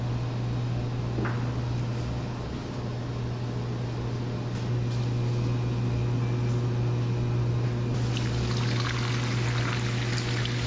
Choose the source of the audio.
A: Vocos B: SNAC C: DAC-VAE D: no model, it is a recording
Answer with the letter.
D